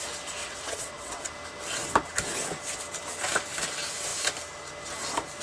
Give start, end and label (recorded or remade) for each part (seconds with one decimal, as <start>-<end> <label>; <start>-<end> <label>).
0.0-0.4 recorded; 0.4-1.3 remade; 1.3-5.4 recorded